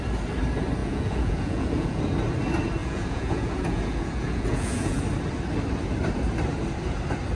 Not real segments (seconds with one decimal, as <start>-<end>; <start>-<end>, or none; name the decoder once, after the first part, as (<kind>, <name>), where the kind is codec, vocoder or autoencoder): 0.8-2.0 (vocoder, Vocos); 2.8-5.0